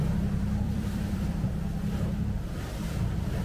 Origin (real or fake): fake